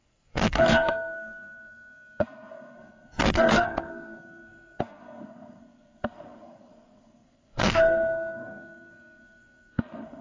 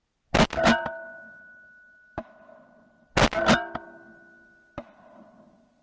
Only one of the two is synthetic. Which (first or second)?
first